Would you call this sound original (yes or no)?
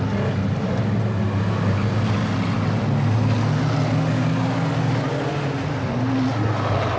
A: yes